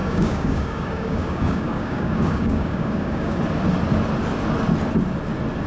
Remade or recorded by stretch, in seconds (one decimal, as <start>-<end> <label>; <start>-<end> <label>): 0.0-3.4 remade; 3.4-5.7 recorded